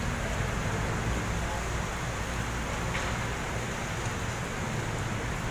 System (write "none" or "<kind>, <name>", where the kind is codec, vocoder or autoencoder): none